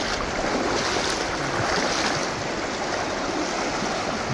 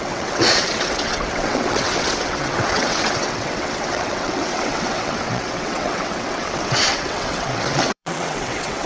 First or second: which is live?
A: first